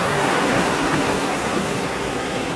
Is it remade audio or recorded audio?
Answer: remade